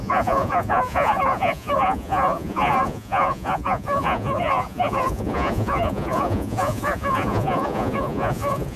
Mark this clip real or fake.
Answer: fake